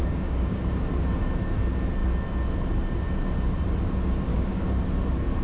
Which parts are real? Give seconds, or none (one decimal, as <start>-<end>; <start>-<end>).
0.7-4.3; 4.8-5.4